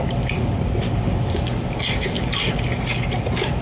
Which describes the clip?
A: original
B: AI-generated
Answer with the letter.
A